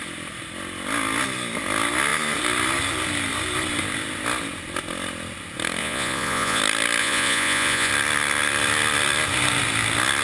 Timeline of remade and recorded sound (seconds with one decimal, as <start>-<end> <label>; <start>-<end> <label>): 0.0-5.8 recorded; 5.8-6.6 remade; 6.6-7.0 recorded; 7.0-7.9 remade; 7.9-10.2 recorded